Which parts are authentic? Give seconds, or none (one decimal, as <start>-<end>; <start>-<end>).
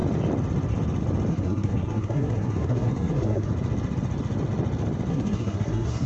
0.0-1.3; 3.5-5.1